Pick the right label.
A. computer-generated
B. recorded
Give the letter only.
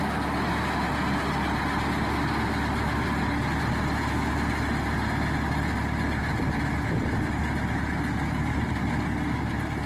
B